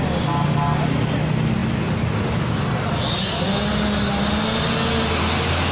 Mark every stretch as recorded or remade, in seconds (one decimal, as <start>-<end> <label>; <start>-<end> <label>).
0.0-5.7 recorded